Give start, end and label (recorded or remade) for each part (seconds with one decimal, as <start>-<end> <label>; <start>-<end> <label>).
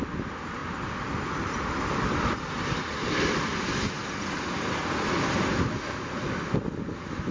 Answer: 0.0-7.3 recorded